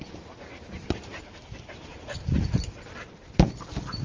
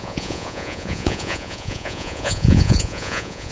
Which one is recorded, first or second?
first